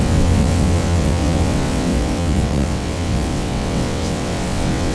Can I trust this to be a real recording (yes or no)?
no